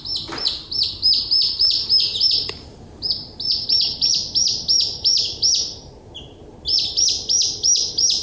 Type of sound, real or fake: real